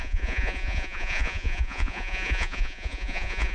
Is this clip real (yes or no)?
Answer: no